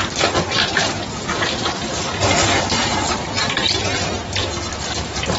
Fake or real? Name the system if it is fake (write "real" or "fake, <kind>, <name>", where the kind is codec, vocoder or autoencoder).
real